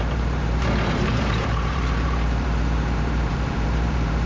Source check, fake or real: fake